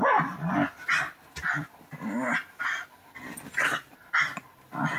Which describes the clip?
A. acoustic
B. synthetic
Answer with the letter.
B